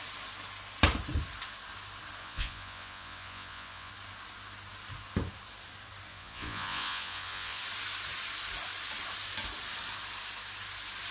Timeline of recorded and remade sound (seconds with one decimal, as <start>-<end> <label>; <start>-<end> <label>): 0.0-2.2 recorded; 2.2-3.9 remade; 3.9-6.1 recorded; 6.1-7.6 remade; 7.6-11.1 recorded

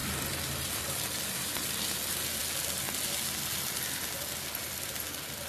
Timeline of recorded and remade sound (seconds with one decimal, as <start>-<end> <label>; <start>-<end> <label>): 0.0-2.4 remade; 2.4-4.6 recorded; 4.6-5.5 remade

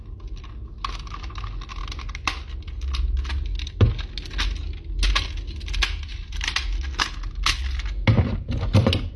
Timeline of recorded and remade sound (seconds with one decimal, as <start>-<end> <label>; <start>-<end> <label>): 0.0-9.2 recorded